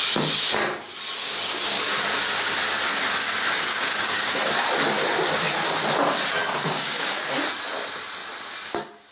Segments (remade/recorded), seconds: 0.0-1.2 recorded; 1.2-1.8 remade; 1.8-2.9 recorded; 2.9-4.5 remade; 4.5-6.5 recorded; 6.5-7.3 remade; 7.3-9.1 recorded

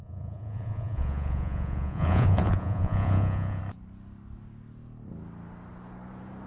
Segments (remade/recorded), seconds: 0.0-3.6 remade; 3.6-6.5 recorded

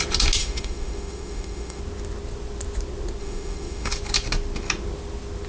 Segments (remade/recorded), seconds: 0.0-0.4 recorded; 0.4-1.8 remade; 1.8-3.2 recorded; 3.2-3.9 remade; 3.9-5.5 recorded

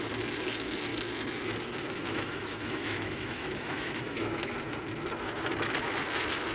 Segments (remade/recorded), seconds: 0.0-2.1 recorded; 2.1-4.5 remade; 4.5-6.5 recorded

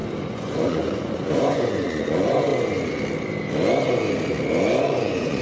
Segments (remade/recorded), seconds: 0.0-2.5 remade; 2.5-4.8 recorded; 4.8-5.4 remade

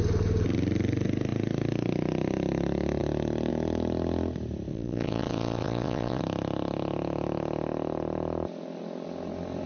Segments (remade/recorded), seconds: 0.0-4.7 recorded; 4.7-6.2 remade; 6.2-9.7 recorded